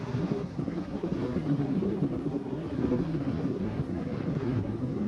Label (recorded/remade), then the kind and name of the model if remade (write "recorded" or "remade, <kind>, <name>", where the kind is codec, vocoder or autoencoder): remade, codec, SNAC